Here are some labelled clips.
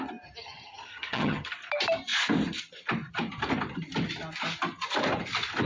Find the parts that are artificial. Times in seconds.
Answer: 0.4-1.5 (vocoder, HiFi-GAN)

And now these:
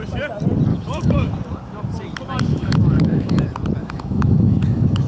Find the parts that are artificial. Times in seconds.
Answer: 0.7-1.3 (autoencoder, DAC-VAE); 2.5-3.4; 3.8-5.1

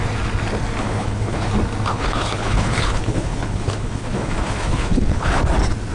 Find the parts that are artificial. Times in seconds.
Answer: 0.8-1.5 (codec, HILCodec); 1.9-5.4

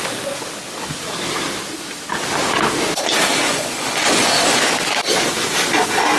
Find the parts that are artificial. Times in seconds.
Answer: 3.3-4.6 (vocoder, Vocos)

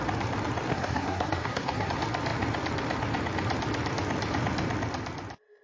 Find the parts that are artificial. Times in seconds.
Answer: 0.7-1.9 (codec, SNAC)

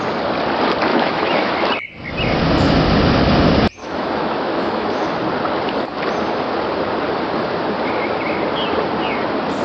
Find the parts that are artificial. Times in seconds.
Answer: 0.9-1.5 (autoencoder, DAC-VAE); 3.8-5.1

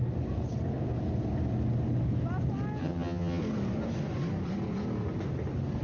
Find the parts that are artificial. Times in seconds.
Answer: 2.8-3.4 (vocoder, HiFi-GAN)